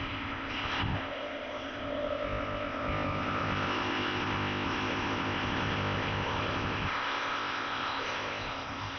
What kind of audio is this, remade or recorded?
remade